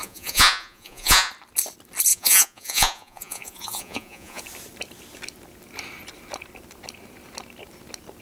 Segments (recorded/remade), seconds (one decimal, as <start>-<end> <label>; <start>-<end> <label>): 0.0-1.3 remade; 1.3-2.1 recorded; 2.1-4.4 remade; 4.4-8.2 recorded